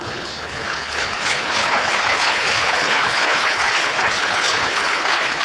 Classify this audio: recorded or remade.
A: remade